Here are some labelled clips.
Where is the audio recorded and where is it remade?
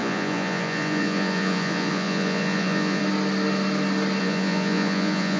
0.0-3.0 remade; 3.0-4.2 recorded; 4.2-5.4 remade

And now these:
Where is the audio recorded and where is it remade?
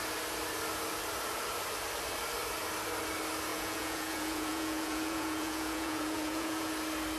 0.0-3.5 recorded; 3.5-6.7 remade; 6.7-7.2 recorded